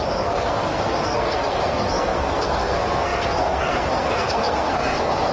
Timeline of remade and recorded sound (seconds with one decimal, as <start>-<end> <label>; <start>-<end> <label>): 0.0-5.3 remade